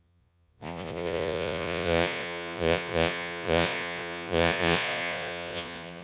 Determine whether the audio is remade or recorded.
remade